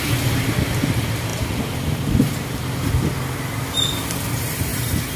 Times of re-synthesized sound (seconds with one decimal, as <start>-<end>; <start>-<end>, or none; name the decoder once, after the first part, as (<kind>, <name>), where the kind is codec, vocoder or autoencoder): none